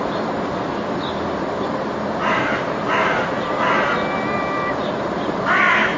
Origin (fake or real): real